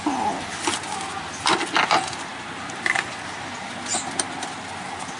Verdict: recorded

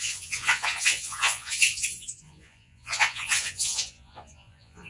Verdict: remade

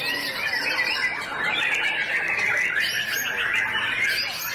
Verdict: recorded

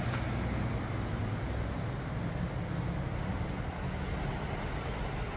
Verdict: recorded